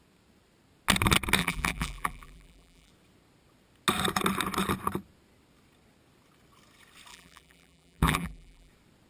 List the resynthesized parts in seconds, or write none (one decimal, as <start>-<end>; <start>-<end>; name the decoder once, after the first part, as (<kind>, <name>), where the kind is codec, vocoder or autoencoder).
1.4-2.9 (vocoder, BigVGAN v2); 7.1-8.7